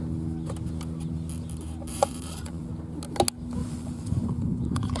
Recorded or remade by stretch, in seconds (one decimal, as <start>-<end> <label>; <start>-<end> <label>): 0.0-1.9 recorded; 1.9-2.7 remade; 2.7-3.6 recorded; 3.6-5.0 remade